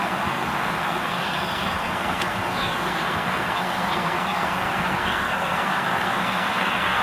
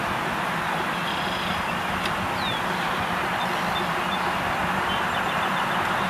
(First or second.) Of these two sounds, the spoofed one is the first